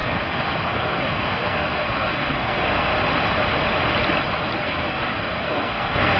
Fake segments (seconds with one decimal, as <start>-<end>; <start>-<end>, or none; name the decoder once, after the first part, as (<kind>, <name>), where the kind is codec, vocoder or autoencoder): 0.0-2.9 (codec, SNAC); 4.6-6.2